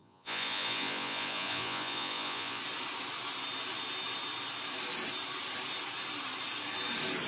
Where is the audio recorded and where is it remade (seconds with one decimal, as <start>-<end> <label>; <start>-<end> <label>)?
0.0-2.6 remade; 2.6-7.3 recorded